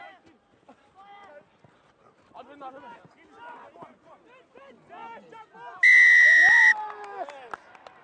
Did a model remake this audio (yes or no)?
no